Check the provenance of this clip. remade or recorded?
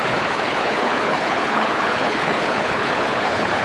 remade